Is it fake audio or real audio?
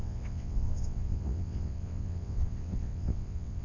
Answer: fake